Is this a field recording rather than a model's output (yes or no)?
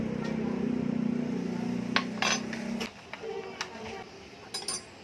yes